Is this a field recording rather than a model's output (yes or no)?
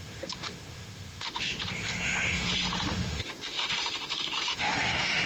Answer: no